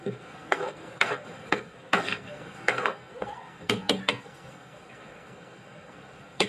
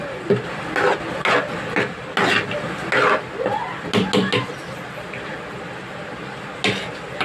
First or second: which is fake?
first